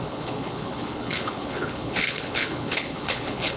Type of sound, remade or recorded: remade